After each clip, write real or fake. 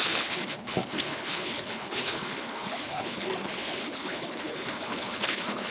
fake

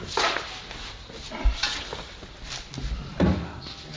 real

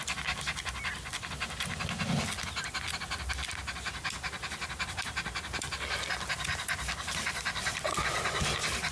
real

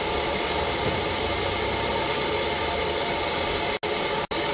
real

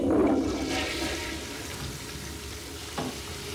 real